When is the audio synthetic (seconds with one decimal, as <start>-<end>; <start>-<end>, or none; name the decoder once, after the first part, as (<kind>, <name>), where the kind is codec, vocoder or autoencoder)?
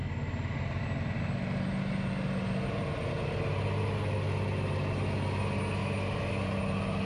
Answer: none